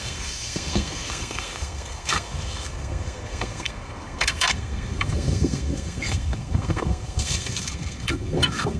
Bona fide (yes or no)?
no